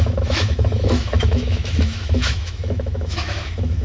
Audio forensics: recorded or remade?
remade